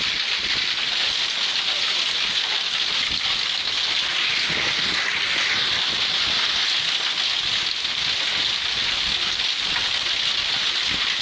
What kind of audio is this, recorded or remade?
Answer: recorded